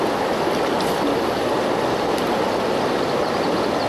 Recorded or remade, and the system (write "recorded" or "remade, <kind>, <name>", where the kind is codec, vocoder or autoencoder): recorded